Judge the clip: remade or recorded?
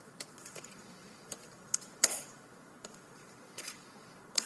remade